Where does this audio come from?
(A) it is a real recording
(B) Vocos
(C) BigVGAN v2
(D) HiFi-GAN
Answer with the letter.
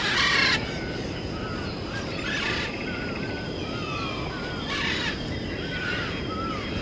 A